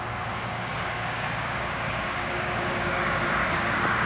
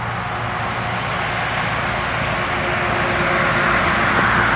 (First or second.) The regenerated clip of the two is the first